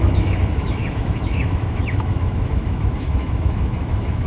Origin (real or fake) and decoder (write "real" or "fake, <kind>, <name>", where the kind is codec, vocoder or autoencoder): fake, autoencoder, DAC-VAE